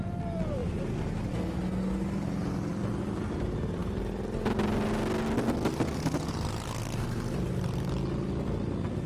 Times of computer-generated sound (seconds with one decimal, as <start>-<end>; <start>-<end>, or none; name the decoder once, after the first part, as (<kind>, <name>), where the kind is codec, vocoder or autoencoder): none